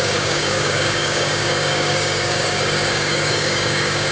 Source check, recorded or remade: remade